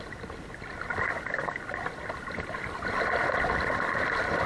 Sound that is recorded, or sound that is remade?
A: remade